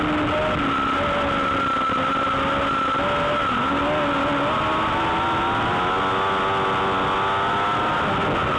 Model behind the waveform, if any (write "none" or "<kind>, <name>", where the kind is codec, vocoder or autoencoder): none